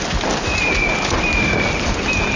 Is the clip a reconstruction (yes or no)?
no